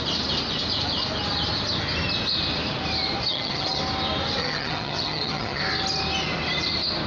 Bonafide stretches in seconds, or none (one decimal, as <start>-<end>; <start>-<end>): 0.0-3.3; 3.8-4.4; 5.6-7.1